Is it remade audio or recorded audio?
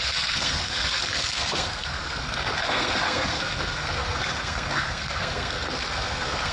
remade